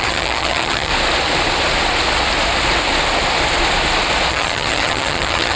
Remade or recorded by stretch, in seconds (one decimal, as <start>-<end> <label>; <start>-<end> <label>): 0.0-0.9 remade; 0.9-4.3 recorded; 4.3-5.6 remade